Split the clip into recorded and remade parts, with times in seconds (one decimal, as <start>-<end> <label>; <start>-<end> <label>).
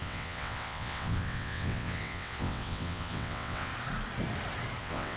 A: 0.0-3.7 remade; 3.7-4.8 recorded; 4.8-5.2 remade